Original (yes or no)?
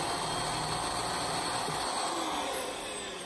yes